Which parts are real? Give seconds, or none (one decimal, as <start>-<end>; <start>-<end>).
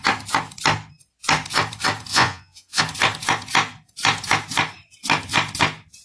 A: 0.0-2.1; 2.8-6.0